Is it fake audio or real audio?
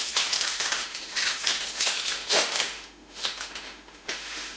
fake